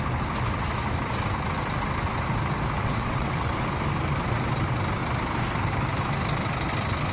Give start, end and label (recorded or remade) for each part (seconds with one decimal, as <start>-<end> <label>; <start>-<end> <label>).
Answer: 0.0-2.8 recorded; 2.8-3.5 remade; 3.5-7.1 recorded